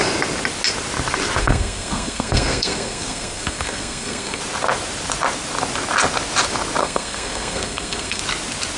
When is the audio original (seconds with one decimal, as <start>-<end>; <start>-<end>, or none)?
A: 0.0-1.4; 4.4-6.8; 8.2-8.8